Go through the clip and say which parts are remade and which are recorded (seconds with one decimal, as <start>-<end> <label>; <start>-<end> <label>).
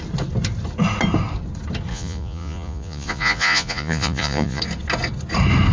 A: 0.0-1.9 recorded; 1.9-4.6 remade; 4.6-5.7 recorded